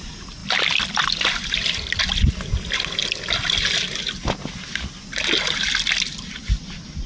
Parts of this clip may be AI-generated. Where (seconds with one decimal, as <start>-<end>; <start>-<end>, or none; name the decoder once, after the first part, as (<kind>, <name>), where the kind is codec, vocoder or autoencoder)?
none